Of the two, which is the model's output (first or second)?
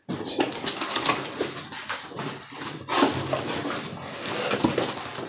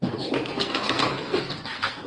second